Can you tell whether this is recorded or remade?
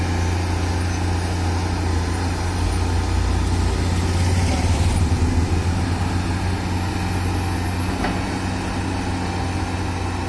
recorded